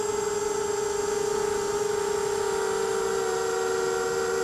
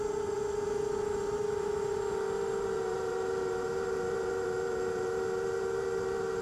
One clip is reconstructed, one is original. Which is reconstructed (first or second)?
second